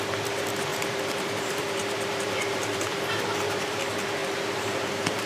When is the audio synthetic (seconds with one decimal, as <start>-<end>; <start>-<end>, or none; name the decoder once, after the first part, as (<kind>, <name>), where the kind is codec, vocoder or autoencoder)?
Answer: 0.7-3.8 (vocoder, BigVGAN v2); 4.2-5.3